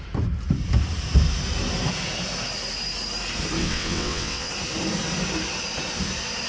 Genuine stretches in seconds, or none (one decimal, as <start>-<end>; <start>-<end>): 0.0-3.6; 4.5-6.5